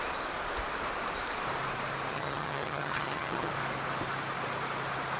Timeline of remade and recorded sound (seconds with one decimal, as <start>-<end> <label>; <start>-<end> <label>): 0.0-2.1 recorded; 2.1-3.5 remade; 3.5-5.2 recorded